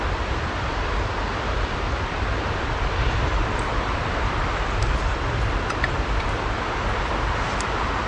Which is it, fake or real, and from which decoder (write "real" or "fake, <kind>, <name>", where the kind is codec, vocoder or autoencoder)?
real